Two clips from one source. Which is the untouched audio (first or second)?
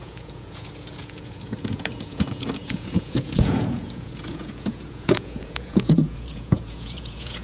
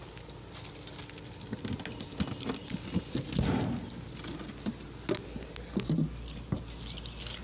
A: second